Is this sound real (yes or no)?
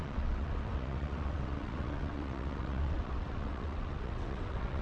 no